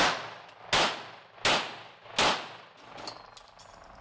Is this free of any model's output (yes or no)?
yes